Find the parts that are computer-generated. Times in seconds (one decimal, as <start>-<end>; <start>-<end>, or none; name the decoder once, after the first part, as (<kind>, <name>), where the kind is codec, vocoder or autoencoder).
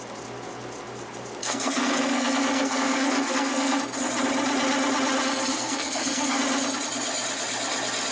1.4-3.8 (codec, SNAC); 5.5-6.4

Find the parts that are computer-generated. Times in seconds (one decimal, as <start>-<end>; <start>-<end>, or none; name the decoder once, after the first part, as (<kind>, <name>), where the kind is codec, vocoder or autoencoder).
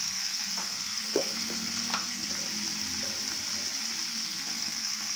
0.0-2.3 (codec, SNAC); 4.1-5.2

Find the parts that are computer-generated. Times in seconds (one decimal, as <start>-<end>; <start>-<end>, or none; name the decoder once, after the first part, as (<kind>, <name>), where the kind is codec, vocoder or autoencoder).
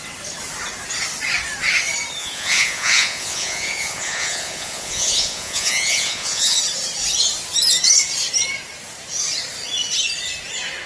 2.2-6.6 (vocoder, Vocos)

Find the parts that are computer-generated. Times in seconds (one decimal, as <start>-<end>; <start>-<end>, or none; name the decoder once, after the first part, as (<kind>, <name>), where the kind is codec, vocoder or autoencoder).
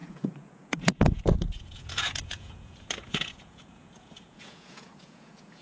0.0-5.6 (vocoder, Vocos)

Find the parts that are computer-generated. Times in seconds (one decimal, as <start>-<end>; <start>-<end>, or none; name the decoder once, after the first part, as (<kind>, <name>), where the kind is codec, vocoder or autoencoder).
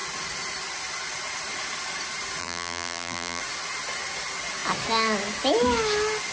2.4-3.4 (vocoder, BigVGAN v2)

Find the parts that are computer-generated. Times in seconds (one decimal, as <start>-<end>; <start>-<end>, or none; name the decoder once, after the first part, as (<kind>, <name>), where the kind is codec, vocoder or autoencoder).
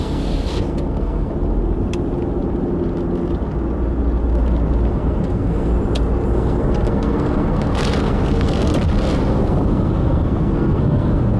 0.0-1.3 (codec, SNAC); 4.9-5.7; 6.3-8.7; 9.3-11.4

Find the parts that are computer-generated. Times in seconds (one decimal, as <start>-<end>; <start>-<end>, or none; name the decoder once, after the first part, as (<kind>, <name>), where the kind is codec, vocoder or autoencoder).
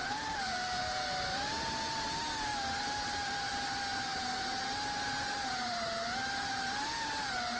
0.0-0.8 (vocoder, BigVGAN v2); 2.5-3.5